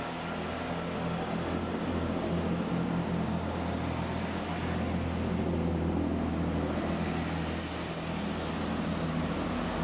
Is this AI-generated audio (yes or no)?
no